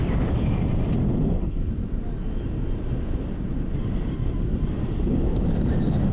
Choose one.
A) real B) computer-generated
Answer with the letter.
A